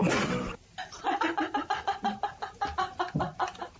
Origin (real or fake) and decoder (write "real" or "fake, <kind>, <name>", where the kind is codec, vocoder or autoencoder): real